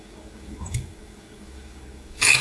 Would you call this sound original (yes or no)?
no